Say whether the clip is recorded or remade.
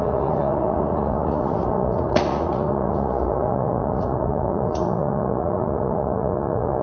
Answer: remade